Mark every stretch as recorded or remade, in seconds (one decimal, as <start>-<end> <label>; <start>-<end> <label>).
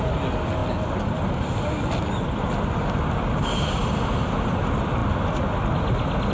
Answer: 0.0-6.3 recorded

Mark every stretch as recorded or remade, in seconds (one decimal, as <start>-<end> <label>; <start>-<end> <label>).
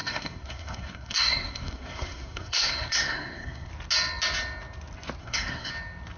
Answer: 0.0-3.7 remade; 3.7-5.2 recorded; 5.2-5.7 remade; 5.7-6.2 recorded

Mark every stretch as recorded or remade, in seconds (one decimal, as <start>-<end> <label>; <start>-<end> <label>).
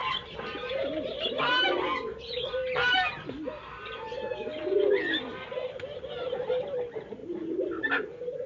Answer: 0.0-4.0 recorded; 4.0-4.6 remade; 4.6-6.6 recorded; 6.6-7.2 remade; 7.2-7.7 recorded; 7.7-8.5 remade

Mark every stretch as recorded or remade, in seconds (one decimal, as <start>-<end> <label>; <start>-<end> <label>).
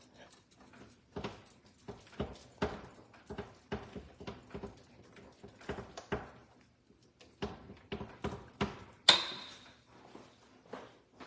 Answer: 0.0-11.3 recorded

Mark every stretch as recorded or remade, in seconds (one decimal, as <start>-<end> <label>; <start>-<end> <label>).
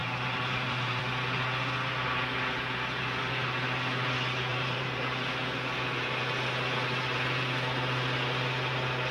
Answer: 0.0-1.0 remade; 1.0-4.5 recorded; 4.5-5.0 remade; 5.0-9.1 recorded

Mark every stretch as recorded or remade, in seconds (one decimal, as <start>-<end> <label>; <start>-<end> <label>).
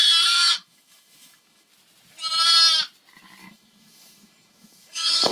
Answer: 0.0-1.7 remade; 1.7-3.4 recorded; 3.4-5.3 remade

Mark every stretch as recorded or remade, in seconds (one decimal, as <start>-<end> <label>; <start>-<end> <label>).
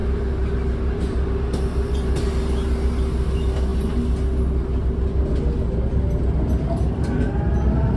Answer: 0.0-8.0 recorded